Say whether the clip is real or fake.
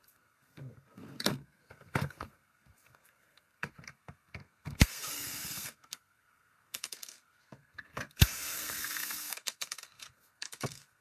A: fake